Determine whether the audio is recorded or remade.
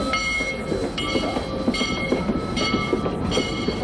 recorded